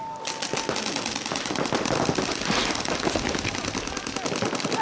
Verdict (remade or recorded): recorded